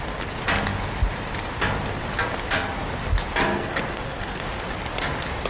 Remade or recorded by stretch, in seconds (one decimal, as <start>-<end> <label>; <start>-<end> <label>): 0.0-3.5 recorded; 3.5-4.4 remade; 4.4-5.5 recorded